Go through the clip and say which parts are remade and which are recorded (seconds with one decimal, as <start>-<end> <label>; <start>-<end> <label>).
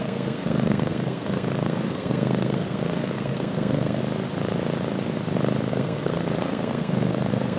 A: 0.0-4.0 remade; 4.0-5.7 recorded; 5.7-7.6 remade